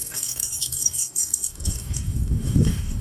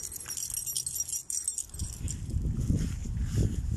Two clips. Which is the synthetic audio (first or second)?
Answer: first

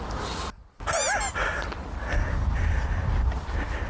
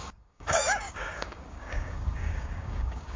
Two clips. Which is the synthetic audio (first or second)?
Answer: second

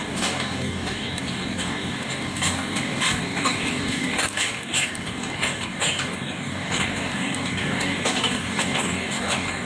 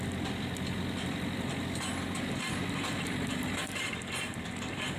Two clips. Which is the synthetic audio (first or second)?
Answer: first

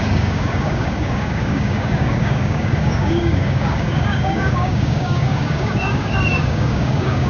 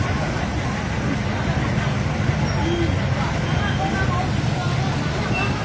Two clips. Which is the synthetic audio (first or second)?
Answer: first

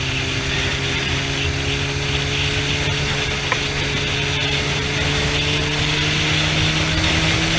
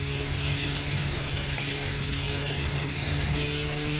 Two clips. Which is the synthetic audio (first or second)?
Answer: second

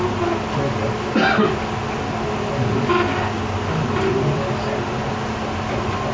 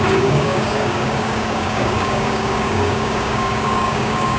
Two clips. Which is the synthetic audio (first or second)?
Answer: second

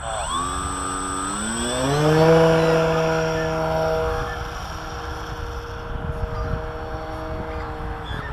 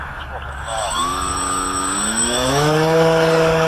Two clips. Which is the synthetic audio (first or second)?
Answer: second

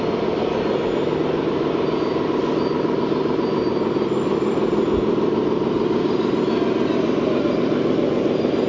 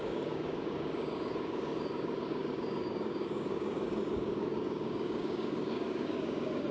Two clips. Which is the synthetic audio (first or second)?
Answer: second